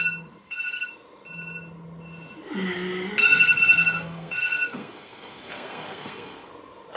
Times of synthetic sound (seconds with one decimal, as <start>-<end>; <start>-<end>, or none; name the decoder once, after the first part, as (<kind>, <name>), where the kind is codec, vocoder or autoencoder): 0.4-0.9 (codec, SNAC); 3.2-6.5